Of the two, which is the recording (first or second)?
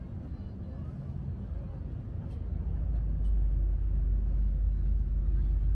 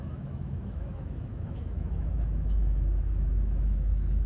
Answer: first